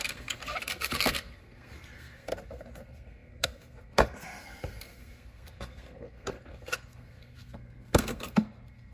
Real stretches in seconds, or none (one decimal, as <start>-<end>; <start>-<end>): none